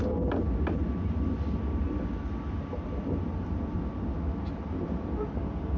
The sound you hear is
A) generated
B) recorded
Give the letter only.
B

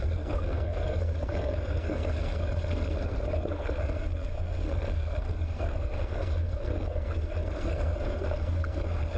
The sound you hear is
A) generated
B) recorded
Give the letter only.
A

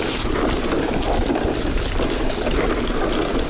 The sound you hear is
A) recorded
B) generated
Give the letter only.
A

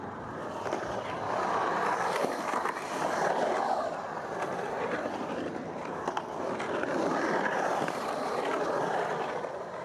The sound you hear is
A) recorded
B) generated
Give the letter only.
A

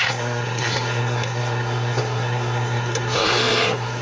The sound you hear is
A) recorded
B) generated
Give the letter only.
B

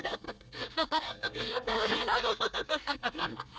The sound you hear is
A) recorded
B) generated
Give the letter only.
B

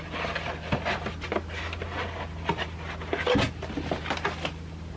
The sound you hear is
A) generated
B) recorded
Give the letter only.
B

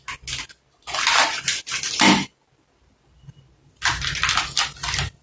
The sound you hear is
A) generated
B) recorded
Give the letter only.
B